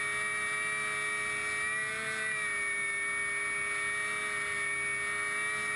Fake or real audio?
real